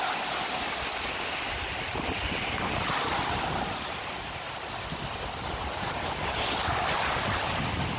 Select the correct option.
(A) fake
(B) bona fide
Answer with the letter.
B